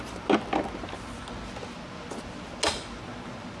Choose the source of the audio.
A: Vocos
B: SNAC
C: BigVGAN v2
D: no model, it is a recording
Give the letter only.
D